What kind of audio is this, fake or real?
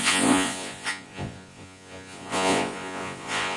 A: fake